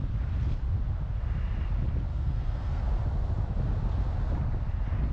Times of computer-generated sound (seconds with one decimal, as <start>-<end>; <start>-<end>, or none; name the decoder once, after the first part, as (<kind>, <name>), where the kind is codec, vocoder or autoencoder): 2.1-2.8 (codec, SNAC)